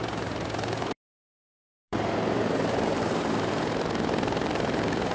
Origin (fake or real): fake